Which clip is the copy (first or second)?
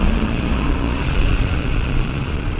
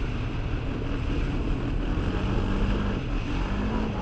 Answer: first